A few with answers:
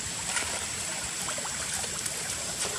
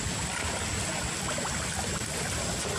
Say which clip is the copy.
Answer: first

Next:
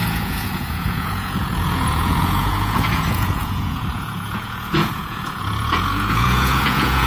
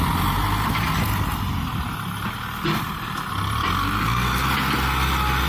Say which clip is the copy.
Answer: first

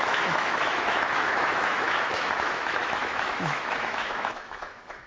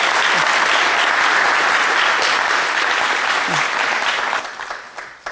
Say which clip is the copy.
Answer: first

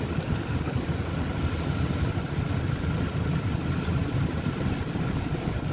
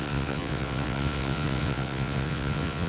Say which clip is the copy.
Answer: second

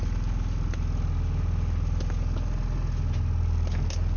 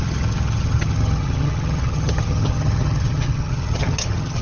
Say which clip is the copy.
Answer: second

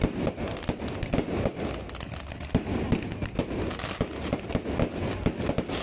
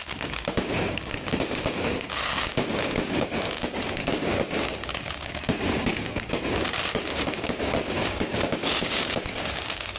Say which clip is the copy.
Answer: second